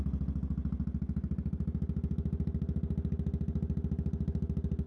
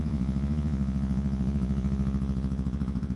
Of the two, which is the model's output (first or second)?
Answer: second